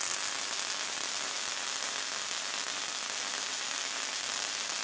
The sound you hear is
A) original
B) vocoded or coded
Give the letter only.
A